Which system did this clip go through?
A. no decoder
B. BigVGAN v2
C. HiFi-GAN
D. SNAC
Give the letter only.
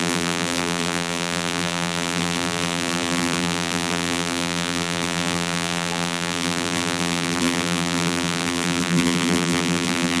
B